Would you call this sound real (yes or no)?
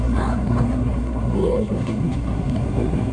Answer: no